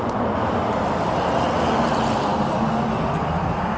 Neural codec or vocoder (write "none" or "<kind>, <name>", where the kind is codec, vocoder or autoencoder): none